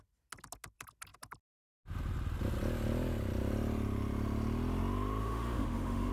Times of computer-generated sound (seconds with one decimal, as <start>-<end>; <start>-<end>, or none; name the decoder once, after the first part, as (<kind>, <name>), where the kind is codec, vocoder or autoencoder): 5.2-6.1 (autoencoder, DAC-VAE)